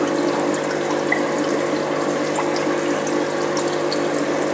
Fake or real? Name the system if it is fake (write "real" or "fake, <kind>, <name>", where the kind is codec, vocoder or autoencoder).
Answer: real